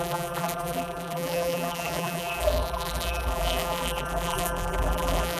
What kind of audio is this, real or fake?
fake